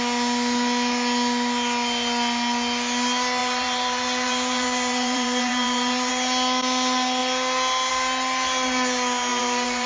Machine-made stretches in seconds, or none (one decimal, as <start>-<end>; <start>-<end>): 3.4-6.1; 9.3-9.9